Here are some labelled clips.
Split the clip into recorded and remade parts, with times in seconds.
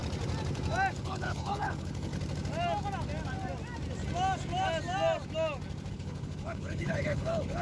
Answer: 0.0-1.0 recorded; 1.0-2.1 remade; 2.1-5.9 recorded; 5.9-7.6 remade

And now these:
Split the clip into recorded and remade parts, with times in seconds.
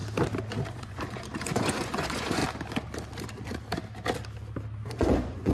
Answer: 0.0-0.7 recorded; 0.7-2.4 remade; 2.4-4.9 recorded; 4.9-5.5 remade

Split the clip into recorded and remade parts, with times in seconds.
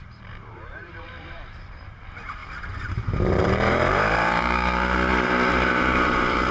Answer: 0.0-6.5 remade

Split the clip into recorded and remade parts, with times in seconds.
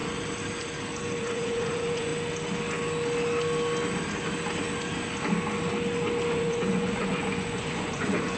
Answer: 0.0-1.2 recorded; 1.2-2.1 remade; 2.1-6.3 recorded; 6.3-8.4 remade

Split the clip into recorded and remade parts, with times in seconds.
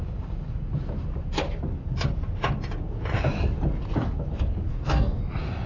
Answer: 0.0-4.7 recorded; 4.7-5.2 remade; 5.2-5.7 recorded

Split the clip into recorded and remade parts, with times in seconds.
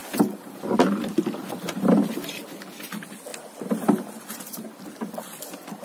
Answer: 0.0-5.8 recorded